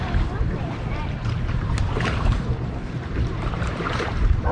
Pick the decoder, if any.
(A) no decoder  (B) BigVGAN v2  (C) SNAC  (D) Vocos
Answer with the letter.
B